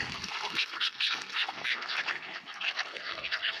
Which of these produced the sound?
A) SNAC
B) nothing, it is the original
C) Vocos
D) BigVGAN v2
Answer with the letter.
A